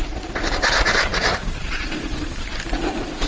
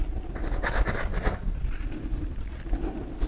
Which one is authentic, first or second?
second